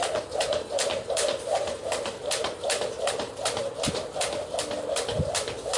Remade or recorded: recorded